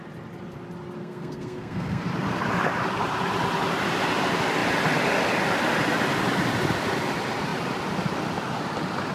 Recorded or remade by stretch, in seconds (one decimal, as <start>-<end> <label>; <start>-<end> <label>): 0.0-1.0 recorded; 1.0-2.0 remade; 2.0-9.1 recorded